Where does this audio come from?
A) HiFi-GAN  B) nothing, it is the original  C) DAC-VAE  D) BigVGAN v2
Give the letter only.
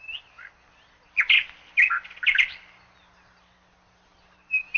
B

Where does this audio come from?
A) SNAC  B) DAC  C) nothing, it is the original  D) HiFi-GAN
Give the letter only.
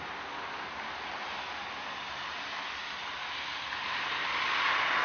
C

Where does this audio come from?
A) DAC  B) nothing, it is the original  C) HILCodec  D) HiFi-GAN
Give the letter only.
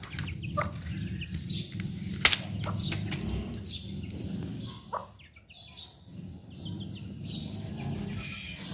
B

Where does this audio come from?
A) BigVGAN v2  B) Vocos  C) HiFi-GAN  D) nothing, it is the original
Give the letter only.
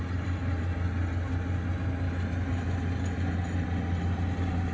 D